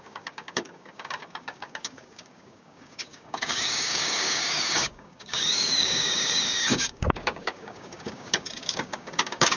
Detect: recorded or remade remade